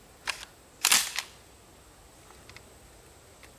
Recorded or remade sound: recorded